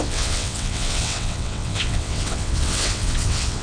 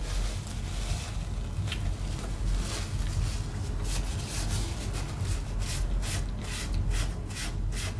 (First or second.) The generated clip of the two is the first